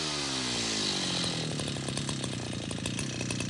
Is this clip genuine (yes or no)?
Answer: yes